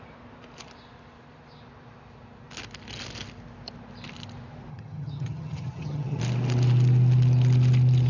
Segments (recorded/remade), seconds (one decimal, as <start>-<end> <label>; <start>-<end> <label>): 0.0-4.7 recorded; 4.7-6.2 remade; 6.2-8.1 recorded